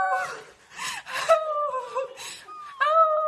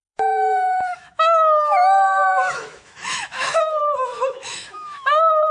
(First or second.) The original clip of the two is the first